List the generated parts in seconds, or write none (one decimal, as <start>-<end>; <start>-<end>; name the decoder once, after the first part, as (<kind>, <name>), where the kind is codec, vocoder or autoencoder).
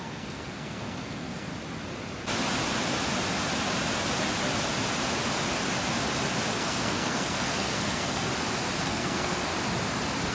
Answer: 0.0-1.5 (codec, SNAC); 6.5-8.3; 8.8-9.5